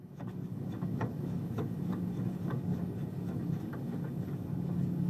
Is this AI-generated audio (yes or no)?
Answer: yes